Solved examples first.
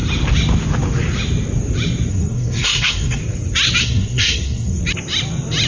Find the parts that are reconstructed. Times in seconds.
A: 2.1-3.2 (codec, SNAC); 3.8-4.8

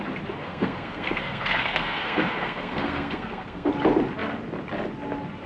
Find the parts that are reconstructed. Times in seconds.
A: 0.4-3.7 (codec, SNAC)

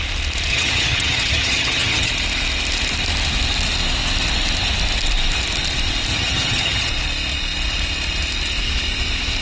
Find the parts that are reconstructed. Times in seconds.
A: 0.5-2.1 (vocoder, HiFi-GAN); 6.1-6.9

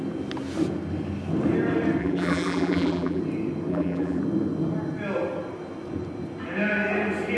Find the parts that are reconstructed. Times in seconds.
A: 2.0-3.2 (vocoder, BigVGAN v2); 3.7-4.2